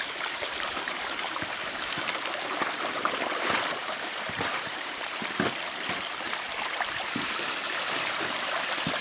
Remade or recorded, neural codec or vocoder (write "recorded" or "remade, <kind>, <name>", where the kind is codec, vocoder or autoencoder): remade, vocoder, BigVGAN v2